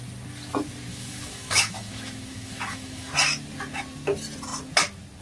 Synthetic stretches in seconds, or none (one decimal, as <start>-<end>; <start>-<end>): 0.9-3.1